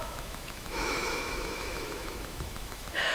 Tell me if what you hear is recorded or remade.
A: remade